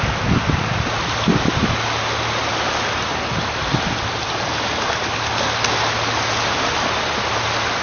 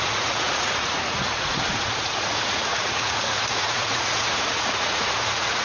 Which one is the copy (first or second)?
second